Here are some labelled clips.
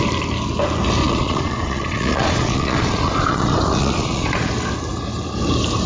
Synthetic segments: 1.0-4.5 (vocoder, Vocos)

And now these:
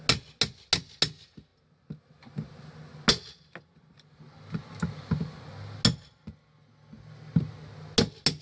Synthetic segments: none

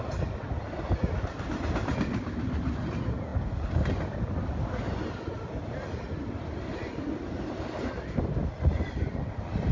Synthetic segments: none

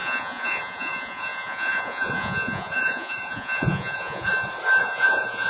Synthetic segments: 0.0-4.3 (vocoder, Vocos); 4.8-5.5

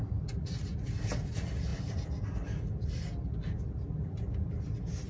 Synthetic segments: none

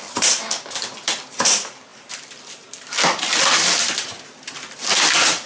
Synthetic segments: none

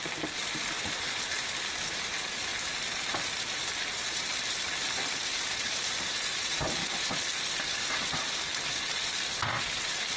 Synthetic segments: none